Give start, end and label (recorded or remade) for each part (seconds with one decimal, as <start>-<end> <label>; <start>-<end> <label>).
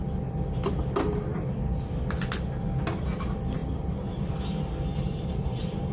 0.0-3.6 recorded; 3.6-4.4 remade; 4.4-4.9 recorded; 4.9-5.9 remade